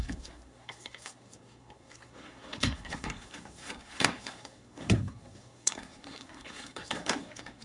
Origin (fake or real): fake